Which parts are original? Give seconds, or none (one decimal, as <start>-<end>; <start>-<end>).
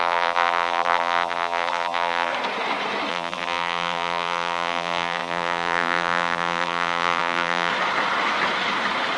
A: 2.3-3.1; 7.7-9.2